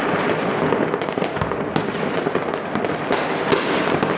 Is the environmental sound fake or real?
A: real